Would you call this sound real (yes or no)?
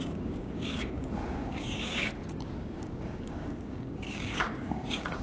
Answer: no